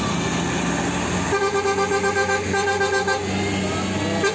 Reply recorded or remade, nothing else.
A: recorded